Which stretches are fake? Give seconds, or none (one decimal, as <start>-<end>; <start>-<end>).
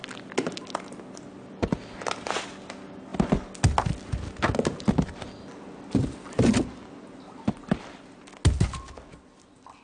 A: none